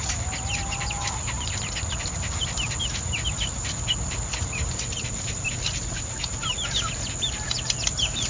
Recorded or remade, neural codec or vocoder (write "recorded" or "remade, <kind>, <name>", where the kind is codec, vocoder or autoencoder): recorded